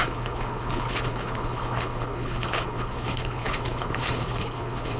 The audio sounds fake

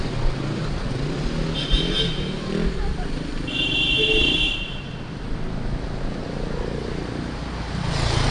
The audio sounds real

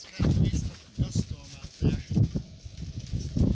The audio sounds real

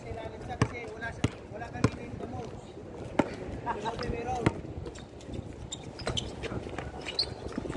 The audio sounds real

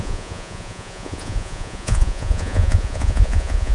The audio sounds fake